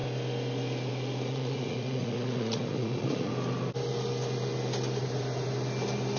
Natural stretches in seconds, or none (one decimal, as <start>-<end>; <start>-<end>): 0.0-1.3; 3.3-6.2